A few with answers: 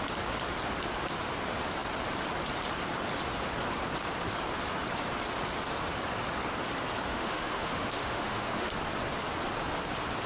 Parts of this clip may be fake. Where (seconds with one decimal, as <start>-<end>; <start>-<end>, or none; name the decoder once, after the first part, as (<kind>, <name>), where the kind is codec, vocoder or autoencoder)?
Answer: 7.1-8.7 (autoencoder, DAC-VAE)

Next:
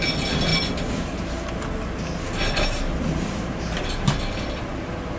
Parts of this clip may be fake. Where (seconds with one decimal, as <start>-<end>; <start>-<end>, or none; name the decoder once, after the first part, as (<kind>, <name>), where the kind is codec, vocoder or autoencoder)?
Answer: 0.0-0.5 (vocoder, BigVGAN v2); 3.6-5.2

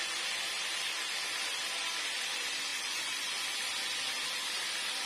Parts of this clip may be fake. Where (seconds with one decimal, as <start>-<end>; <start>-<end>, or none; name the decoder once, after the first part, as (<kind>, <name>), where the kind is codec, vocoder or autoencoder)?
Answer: 2.7-3.4 (vocoder, Vocos)